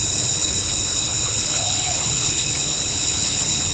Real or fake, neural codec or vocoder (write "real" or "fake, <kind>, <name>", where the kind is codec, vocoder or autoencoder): fake, codec, HILCodec